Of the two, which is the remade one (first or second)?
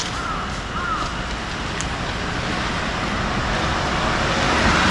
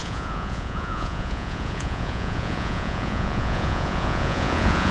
second